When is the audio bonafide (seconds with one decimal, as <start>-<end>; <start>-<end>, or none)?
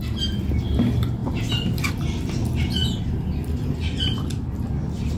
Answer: 0.0-5.2